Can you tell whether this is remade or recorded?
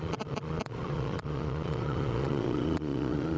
remade